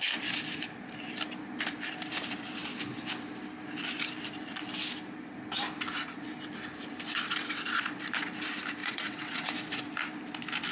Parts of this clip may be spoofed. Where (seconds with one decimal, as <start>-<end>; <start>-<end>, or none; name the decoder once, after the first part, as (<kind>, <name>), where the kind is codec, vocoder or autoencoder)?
8.8-9.5 (vocoder, WaveNeXt)